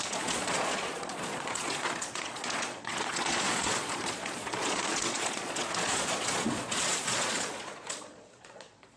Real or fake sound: fake